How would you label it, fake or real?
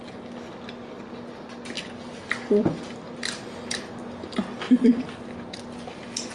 real